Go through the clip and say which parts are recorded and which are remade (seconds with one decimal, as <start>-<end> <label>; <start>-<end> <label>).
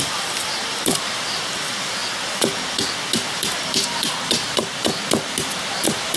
0.0-2.0 remade; 2.0-3.3 recorded; 3.3-4.6 remade; 4.6-5.8 recorded; 5.8-6.2 remade